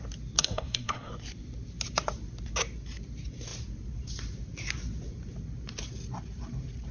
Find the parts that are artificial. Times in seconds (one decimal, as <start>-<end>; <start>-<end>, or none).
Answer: 0.4-1.1

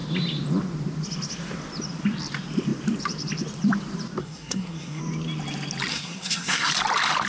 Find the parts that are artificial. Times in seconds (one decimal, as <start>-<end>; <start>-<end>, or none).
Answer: 4.2-5.0; 5.9-6.7

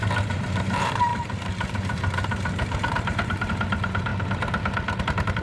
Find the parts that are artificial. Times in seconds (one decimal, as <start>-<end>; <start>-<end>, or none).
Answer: 0.0-4.1; 5.0-5.4

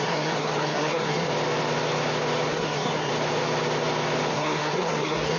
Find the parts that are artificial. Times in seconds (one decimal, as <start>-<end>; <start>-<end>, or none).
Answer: 0.0-1.3; 2.5-3.1; 4.3-5.4

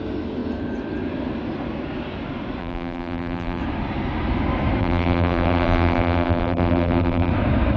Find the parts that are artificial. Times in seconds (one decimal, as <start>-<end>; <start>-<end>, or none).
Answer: 2.6-3.6; 4.8-7.3